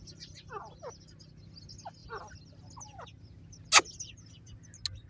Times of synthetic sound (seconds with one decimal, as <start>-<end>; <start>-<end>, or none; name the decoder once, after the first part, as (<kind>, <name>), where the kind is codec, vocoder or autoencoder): none